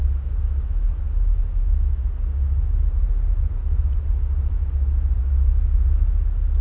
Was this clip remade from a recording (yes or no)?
no